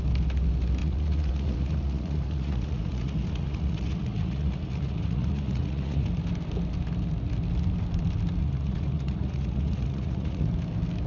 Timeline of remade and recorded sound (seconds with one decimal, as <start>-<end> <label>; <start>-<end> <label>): 0.0-0.8 recorded; 0.8-6.1 remade; 6.1-8.4 recorded; 8.4-10.5 remade; 10.5-11.1 recorded